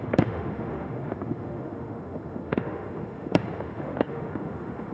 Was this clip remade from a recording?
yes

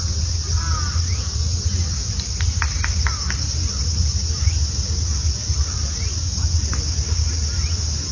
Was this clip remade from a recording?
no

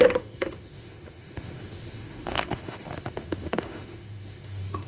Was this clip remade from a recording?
yes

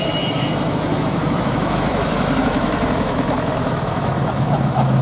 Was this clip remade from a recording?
yes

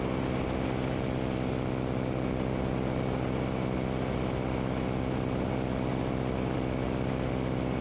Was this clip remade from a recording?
no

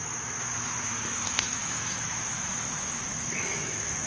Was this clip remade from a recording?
yes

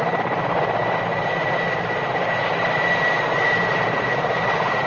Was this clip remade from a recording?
no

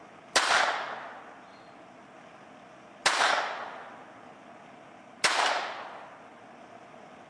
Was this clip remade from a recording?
no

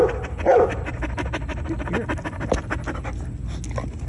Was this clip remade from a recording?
no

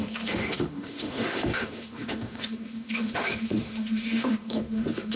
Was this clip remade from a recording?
yes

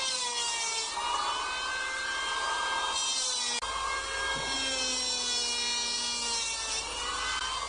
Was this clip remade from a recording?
no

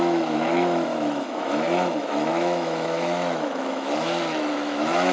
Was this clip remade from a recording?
yes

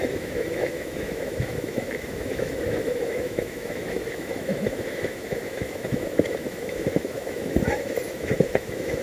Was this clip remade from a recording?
yes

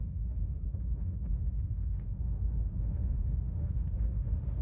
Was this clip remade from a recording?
yes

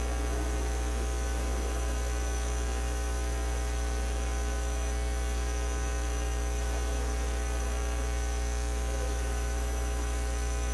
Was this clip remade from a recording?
yes